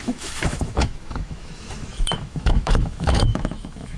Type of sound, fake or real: fake